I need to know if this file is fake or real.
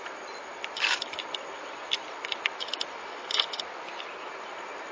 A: real